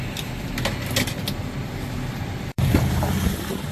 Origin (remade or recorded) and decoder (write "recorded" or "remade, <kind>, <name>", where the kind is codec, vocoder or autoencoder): remade, vocoder, BigVGAN v2